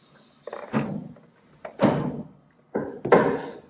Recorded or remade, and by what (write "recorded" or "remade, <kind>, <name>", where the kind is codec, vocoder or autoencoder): recorded